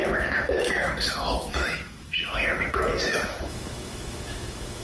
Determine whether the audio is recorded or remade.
remade